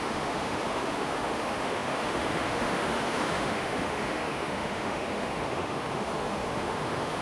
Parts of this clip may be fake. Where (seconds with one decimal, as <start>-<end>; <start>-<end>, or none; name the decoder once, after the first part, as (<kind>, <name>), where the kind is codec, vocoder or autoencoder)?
0.0-7.2 (autoencoder, DAC-VAE)